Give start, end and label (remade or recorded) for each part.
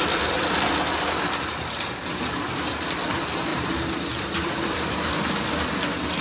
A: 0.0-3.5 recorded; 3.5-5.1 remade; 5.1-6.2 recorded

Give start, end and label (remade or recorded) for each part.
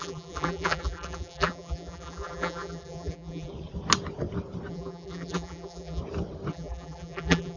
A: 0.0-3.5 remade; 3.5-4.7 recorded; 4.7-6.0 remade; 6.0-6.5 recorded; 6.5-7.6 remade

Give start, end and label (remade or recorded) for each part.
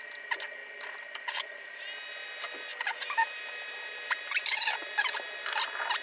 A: 0.0-2.7 recorded; 2.7-5.5 remade; 5.5-6.0 recorded